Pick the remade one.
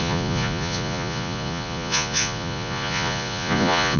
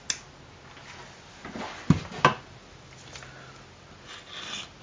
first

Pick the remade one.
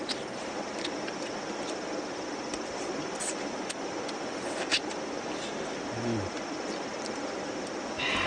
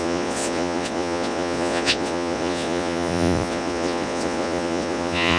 second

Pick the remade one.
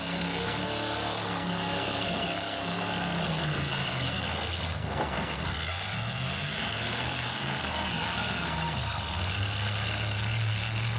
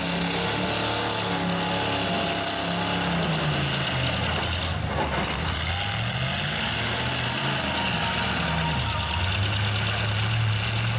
first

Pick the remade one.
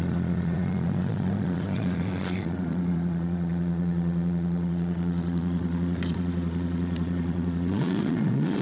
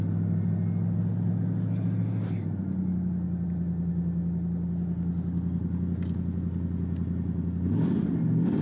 first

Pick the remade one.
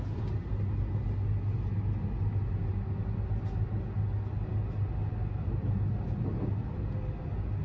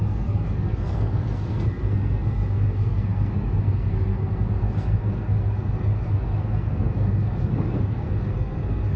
second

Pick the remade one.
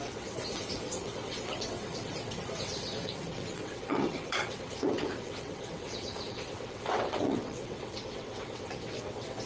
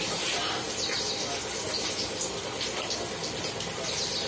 first